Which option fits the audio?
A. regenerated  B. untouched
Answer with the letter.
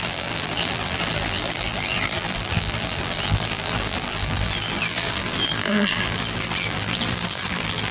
A